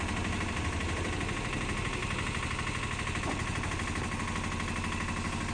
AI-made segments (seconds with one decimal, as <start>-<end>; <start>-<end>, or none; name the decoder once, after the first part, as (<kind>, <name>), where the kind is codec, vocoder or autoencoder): none